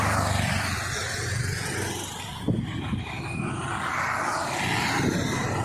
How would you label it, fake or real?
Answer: real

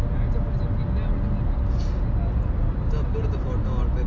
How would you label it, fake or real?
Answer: real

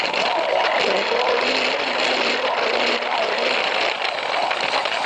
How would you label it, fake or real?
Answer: real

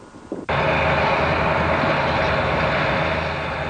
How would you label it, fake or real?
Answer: real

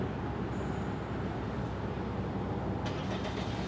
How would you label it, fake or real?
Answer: real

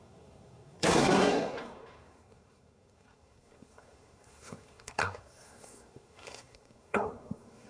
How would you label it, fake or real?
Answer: fake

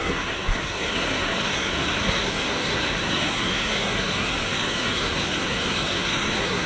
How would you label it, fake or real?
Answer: fake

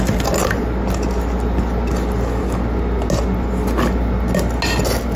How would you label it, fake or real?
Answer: real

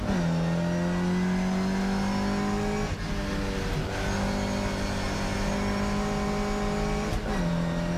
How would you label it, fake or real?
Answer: real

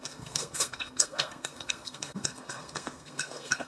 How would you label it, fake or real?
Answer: fake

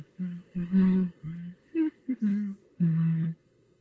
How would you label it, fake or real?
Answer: fake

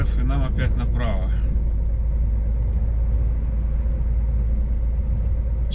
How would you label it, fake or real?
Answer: real